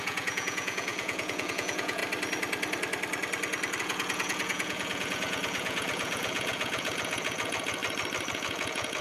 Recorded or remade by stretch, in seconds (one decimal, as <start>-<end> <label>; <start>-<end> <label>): 0.0-2.0 remade; 2.0-3.8 recorded; 3.8-7.8 remade; 7.8-8.3 recorded; 8.3-9.0 remade